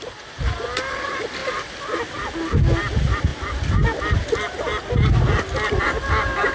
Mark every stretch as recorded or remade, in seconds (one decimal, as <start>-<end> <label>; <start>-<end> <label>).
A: 0.0-6.5 recorded